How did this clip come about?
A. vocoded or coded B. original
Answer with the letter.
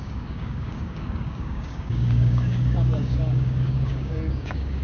A